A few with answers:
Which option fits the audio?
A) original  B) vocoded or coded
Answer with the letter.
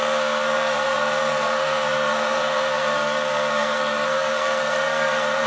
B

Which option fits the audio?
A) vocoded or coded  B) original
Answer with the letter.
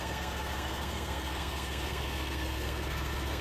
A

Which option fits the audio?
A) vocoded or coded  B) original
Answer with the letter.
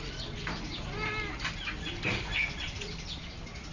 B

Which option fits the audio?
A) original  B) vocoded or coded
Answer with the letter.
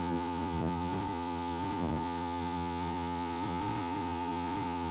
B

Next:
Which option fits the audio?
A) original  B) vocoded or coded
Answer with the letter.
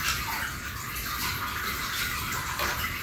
A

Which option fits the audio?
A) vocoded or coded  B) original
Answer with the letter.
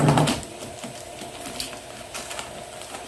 B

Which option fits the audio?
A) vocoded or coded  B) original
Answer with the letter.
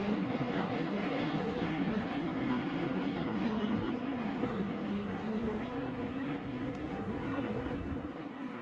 A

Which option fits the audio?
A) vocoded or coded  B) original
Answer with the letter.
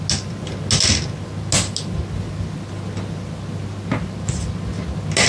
B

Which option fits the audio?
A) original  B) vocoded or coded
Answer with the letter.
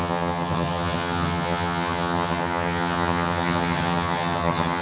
B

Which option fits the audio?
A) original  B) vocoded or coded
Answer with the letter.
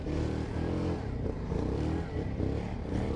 A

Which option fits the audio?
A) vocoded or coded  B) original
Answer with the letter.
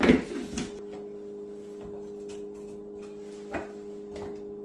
B